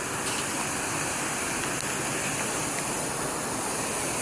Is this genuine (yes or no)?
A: yes